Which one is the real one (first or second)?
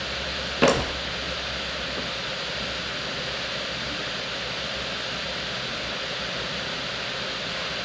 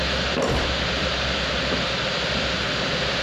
first